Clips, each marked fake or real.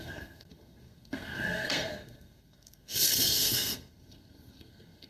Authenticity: fake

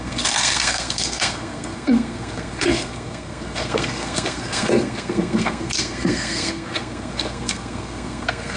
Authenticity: fake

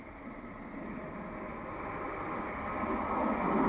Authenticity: real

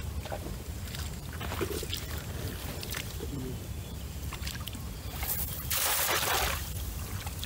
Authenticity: fake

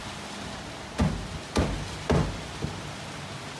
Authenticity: real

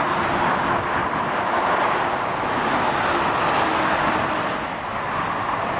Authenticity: real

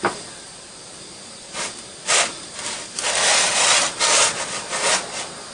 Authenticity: real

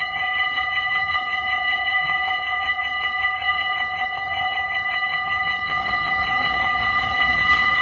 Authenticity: fake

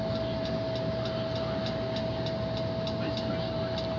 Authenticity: real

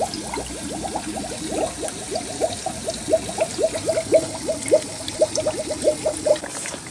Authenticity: real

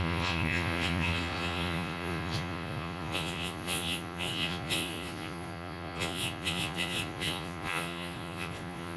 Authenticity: fake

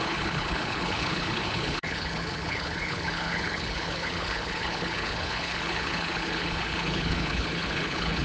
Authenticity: fake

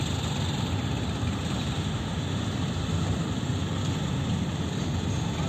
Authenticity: real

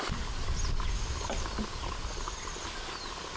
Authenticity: real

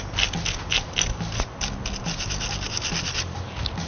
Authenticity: real